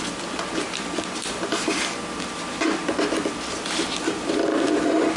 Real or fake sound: real